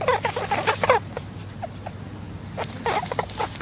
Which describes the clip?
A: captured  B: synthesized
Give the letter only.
A